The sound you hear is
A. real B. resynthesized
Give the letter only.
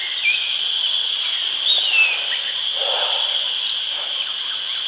A